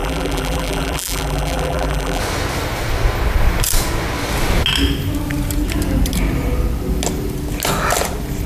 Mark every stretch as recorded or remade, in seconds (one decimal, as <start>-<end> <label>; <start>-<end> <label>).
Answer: 0.0-2.2 remade; 2.2-8.5 recorded